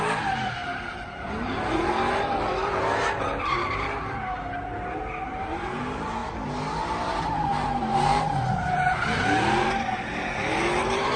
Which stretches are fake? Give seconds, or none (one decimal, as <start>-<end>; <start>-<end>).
0.0-6.2; 7.0-11.2